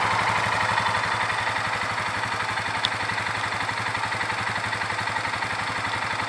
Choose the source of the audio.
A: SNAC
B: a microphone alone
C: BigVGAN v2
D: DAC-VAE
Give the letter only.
B